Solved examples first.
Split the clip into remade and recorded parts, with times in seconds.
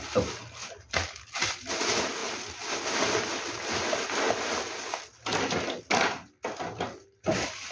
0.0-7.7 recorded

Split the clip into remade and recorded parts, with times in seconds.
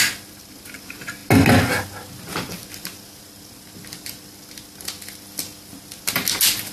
0.0-6.7 recorded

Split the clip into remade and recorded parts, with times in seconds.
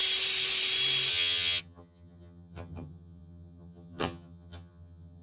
0.0-1.1 recorded; 1.1-5.2 remade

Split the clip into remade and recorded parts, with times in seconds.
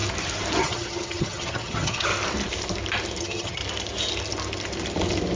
0.0-0.6 recorded; 0.6-2.1 remade; 2.1-3.2 recorded; 3.2-3.6 remade; 3.6-5.4 recorded